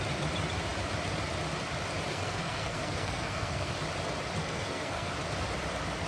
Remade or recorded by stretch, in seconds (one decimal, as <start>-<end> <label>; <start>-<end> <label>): 0.0-2.1 recorded; 2.1-3.7 remade; 3.7-4.4 recorded; 4.4-5.1 remade; 5.1-6.1 recorded

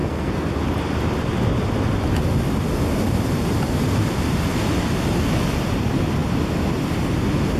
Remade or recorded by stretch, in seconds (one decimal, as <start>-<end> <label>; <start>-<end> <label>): 0.0-0.5 remade; 0.5-7.6 recorded

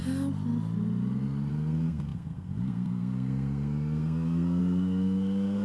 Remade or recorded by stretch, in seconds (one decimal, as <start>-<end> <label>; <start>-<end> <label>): 0.0-1.5 recorded; 1.5-5.6 remade